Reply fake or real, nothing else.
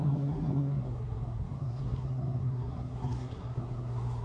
fake